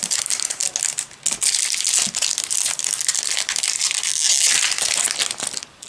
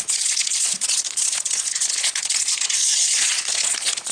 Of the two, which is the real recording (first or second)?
first